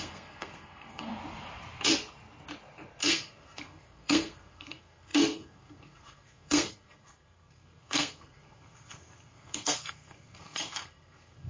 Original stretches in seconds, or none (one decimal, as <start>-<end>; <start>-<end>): 1.1-3.0